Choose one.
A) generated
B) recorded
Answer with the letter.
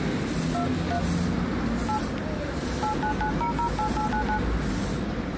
B